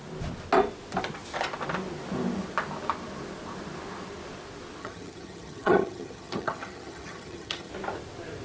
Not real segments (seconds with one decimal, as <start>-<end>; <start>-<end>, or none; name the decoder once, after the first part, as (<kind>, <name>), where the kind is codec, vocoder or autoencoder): 4.8-7.7 (vocoder, HiFi-GAN)